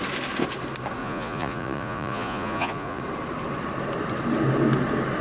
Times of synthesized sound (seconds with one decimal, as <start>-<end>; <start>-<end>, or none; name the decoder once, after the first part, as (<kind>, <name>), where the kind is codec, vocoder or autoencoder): 1.0-3.0 (vocoder, Vocos)